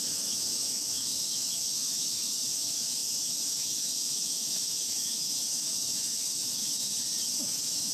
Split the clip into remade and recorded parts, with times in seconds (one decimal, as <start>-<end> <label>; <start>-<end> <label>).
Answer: 0.0-6.9 remade; 6.9-7.4 recorded; 7.4-7.9 remade